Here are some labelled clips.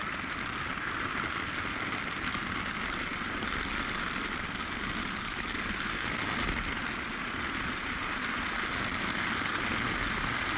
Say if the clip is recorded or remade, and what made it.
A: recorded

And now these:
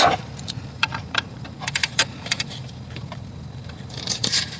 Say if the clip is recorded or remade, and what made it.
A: remade, vocoder, BigVGAN v2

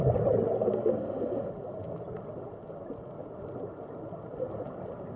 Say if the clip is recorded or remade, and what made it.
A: recorded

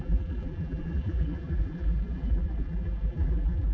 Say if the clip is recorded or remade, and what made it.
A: remade, vocoder, BigVGAN v2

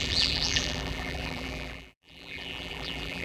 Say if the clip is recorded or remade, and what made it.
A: remade, vocoder, BigVGAN v2